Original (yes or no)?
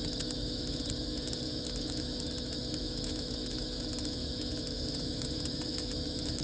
no